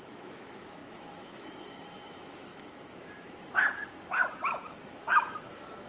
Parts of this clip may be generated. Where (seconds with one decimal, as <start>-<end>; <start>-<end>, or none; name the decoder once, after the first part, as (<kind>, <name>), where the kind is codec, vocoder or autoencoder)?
0.0-5.9 (autoencoder, DAC-VAE)